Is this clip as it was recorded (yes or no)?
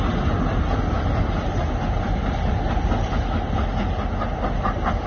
yes